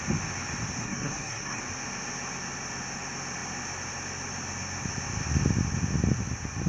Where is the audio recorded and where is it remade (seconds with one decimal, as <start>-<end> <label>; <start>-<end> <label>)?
0.0-0.8 recorded; 0.8-1.6 remade; 1.6-6.7 recorded